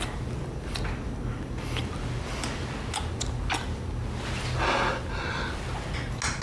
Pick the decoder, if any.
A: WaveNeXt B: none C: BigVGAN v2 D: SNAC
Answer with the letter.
B